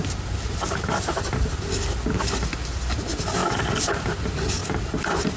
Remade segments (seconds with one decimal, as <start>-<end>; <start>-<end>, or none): none